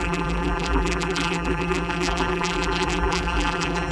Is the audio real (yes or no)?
no